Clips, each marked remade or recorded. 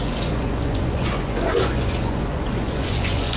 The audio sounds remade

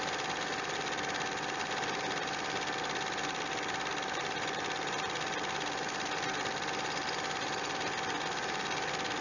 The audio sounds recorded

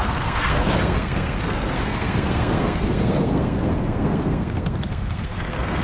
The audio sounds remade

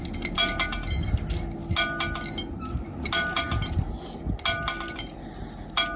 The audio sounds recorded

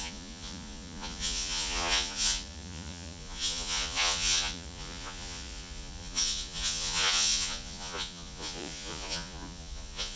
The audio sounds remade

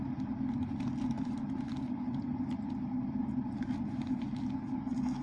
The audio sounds recorded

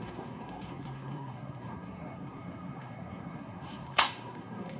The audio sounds remade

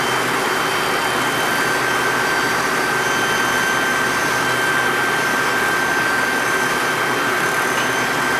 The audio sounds recorded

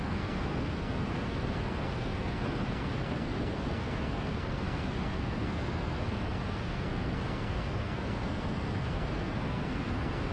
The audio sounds remade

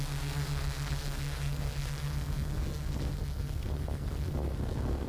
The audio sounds remade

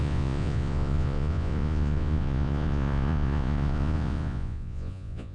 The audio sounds remade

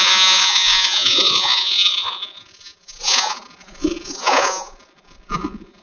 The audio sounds remade